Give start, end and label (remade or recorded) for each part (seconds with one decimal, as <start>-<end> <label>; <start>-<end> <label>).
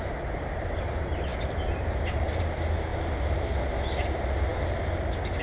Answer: 0.0-5.4 recorded